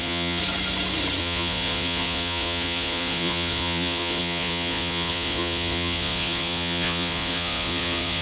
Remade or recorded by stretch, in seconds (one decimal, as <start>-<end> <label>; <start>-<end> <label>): 0.0-0.4 remade; 0.4-1.2 recorded; 1.2-8.2 remade

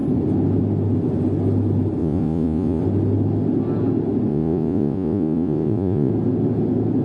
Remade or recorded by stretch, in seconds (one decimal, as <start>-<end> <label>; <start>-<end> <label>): 0.0-2.0 recorded; 2.0-2.8 remade; 2.8-4.3 recorded; 4.3-6.1 remade; 6.1-7.0 recorded

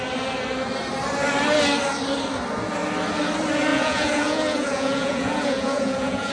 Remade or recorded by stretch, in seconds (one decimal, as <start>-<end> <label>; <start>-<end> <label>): 0.0-3.7 recorded; 3.7-6.3 remade

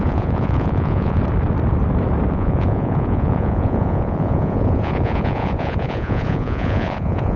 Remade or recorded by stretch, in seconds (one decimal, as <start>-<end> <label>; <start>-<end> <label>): 0.0-1.2 remade; 1.2-2.3 recorded; 2.3-7.4 remade

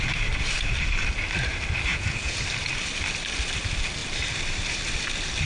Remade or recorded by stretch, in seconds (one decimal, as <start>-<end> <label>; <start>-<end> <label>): 0.0-1.9 recorded; 1.9-2.4 remade; 2.4-5.4 recorded

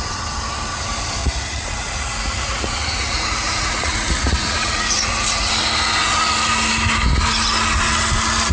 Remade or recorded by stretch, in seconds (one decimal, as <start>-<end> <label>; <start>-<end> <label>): 0.0-1.2 recorded; 1.2-5.5 remade; 5.5-8.5 recorded